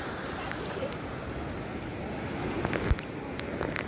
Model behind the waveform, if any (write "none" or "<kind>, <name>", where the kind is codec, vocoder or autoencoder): none